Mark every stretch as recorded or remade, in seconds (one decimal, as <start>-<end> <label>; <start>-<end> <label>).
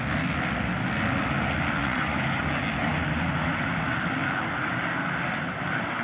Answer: 0.0-1.8 recorded; 1.8-2.4 remade; 2.4-6.0 recorded